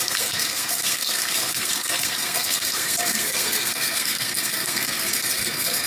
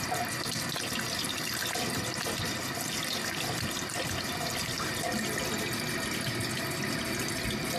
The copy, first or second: first